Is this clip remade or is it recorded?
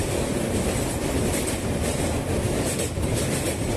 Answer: recorded